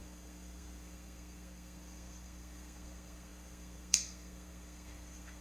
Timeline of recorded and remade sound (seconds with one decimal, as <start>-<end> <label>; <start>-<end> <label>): 0.0-5.4 remade